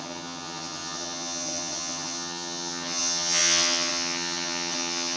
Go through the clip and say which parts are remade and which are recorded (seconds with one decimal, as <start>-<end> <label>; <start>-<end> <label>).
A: 0.0-5.2 remade